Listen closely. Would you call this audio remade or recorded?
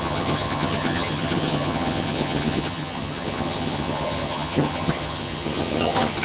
remade